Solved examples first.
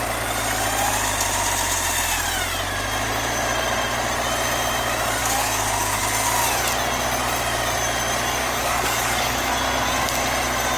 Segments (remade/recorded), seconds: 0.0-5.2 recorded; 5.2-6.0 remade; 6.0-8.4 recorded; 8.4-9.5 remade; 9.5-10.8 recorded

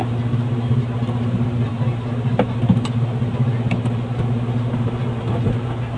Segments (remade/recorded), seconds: 0.0-6.0 recorded

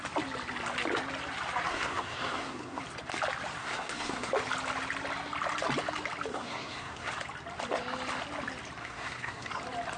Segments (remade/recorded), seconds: 0.0-1.7 recorded; 1.7-2.8 remade; 2.8-3.6 recorded; 3.6-4.3 remade; 4.3-6.3 recorded; 6.3-7.1 remade; 7.1-8.8 recorded; 8.8-9.5 remade; 9.5-10.0 recorded

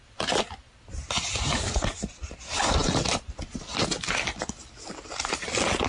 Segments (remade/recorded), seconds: 0.0-5.9 recorded

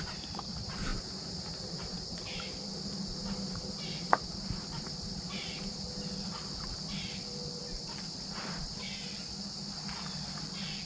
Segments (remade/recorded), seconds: 0.0-0.9 remade; 0.9-1.8 recorded; 1.8-2.7 remade; 2.7-3.7 recorded; 3.7-10.9 remade

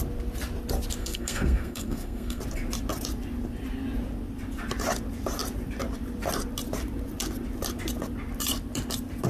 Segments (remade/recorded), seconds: 0.0-1.0 recorded; 1.0-2.4 remade; 2.4-9.3 recorded